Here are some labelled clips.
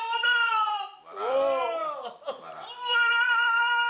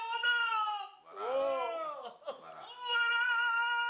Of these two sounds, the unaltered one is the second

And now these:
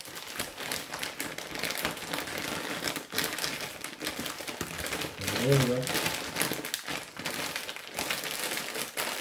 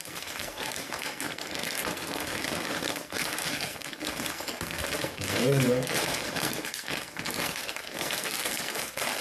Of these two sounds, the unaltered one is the first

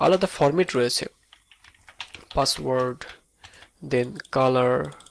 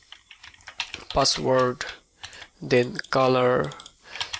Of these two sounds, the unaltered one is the first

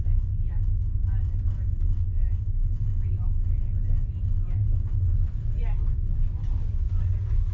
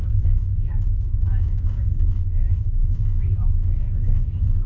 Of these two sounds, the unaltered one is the first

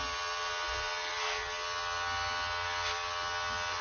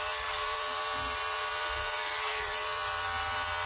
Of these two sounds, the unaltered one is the first